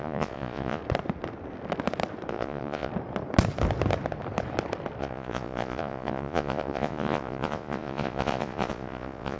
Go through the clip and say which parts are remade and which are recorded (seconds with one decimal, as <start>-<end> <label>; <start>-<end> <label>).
0.0-0.8 remade; 0.8-2.3 recorded; 2.3-2.9 remade; 2.9-5.0 recorded; 5.0-9.4 remade

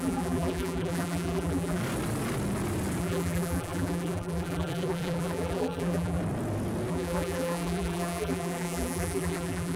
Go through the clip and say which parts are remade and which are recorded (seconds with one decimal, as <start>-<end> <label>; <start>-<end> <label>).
0.0-1.8 remade; 1.8-3.0 recorded; 3.0-6.2 remade; 6.2-6.9 recorded; 6.9-9.8 remade

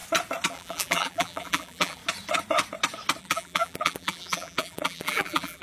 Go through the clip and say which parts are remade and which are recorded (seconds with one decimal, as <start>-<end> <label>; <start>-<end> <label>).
0.0-0.5 recorded; 0.5-2.0 remade; 2.0-3.2 recorded; 3.2-5.6 remade

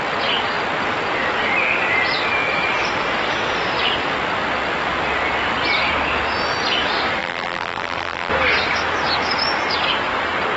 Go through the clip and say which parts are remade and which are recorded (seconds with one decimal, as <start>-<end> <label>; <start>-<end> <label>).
0.0-7.2 recorded; 7.2-8.3 remade; 8.3-10.6 recorded

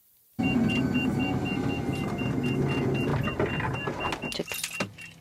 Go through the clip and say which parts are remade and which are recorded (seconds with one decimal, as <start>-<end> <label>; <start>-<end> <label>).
0.0-5.2 recorded

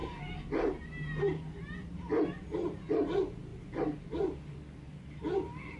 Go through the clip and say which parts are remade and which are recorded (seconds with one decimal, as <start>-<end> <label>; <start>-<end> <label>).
0.0-5.8 recorded

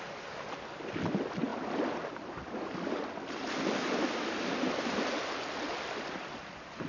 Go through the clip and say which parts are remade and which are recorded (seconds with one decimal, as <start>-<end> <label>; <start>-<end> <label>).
0.0-6.9 recorded